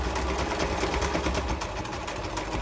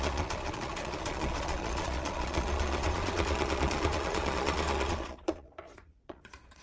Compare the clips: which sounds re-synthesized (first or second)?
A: second